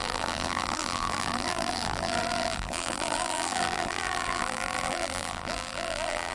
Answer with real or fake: fake